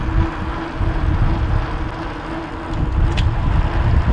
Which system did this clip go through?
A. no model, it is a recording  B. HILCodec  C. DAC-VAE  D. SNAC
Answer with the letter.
A